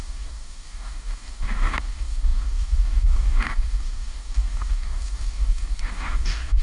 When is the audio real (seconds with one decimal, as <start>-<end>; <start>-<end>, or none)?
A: none